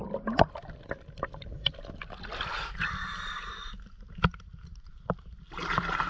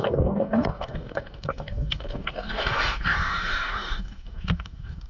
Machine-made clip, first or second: second